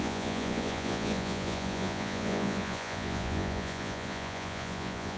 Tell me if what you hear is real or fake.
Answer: fake